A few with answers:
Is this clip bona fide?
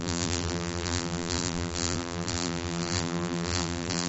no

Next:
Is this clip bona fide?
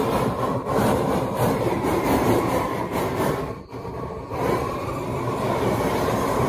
no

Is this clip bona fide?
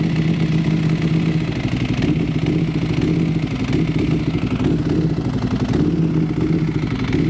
yes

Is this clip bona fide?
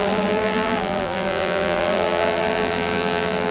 no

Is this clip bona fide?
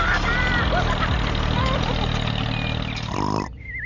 yes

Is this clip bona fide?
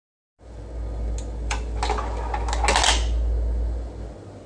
yes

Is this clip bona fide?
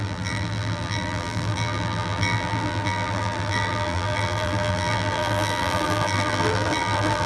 no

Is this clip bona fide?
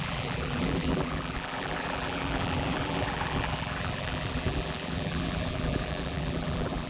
no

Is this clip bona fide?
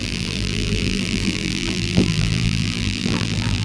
no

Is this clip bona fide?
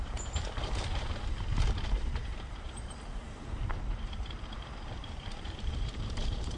no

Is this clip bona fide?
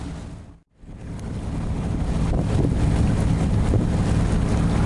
yes